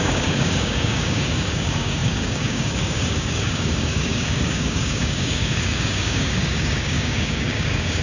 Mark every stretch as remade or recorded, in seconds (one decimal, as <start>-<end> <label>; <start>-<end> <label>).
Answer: 0.0-8.0 remade